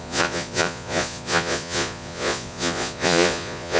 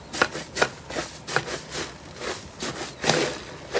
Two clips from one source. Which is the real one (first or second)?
second